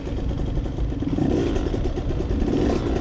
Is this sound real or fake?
real